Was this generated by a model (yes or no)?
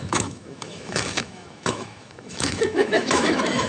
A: yes